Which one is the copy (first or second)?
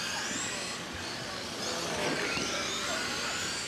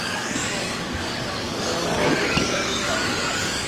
second